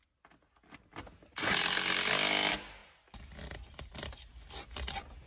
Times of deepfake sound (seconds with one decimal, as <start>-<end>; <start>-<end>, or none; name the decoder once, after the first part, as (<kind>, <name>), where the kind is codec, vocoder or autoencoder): none